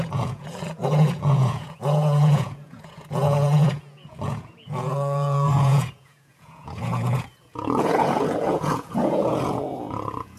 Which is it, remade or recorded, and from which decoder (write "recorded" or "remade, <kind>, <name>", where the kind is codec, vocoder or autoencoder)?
remade, vocoder, Vocos